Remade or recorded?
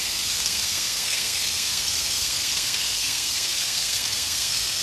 remade